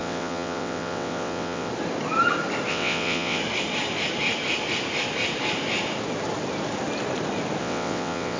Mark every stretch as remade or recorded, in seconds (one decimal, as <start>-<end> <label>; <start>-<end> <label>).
0.0-1.7 remade; 1.7-2.7 recorded; 2.7-3.4 remade; 3.4-7.6 recorded; 7.6-8.4 remade